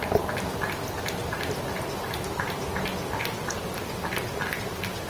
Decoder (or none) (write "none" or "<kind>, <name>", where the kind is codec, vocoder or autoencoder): none